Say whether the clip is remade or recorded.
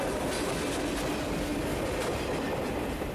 recorded